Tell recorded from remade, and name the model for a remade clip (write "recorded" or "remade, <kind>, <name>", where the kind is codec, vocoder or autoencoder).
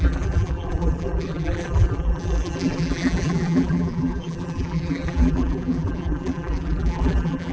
remade, vocoder, BigVGAN v2